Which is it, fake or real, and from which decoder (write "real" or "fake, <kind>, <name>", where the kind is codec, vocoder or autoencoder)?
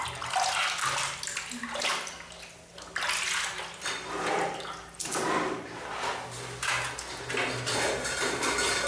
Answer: real